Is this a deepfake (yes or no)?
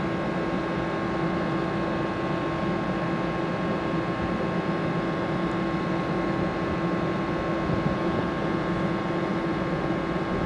no